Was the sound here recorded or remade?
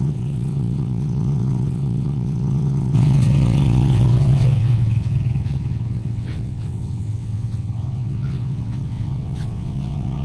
remade